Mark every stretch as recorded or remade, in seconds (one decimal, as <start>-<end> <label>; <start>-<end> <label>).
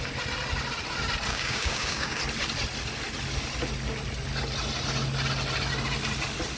0.0-1.3 recorded; 1.3-2.2 remade; 2.2-6.6 recorded